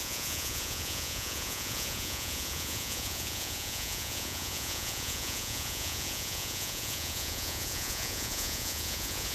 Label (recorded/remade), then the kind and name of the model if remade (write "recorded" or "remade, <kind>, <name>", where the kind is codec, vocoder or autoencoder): remade, vocoder, Vocos